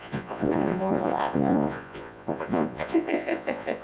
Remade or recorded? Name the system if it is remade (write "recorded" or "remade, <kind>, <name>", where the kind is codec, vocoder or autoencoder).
remade, vocoder, Vocos